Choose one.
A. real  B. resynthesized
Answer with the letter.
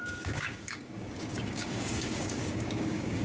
B